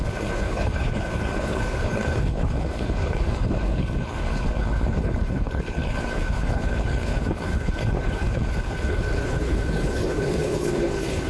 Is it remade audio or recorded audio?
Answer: remade